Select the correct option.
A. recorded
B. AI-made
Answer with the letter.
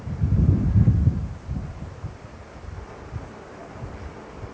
A